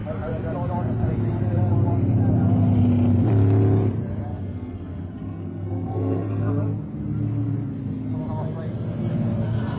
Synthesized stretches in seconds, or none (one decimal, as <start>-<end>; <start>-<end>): 4.3-6.6